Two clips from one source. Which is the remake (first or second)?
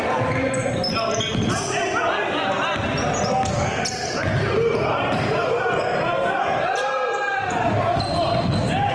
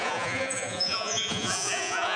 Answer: second